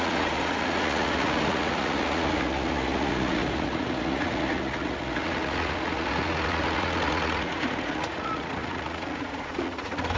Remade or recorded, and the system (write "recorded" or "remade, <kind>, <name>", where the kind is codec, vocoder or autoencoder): remade, vocoder, Vocos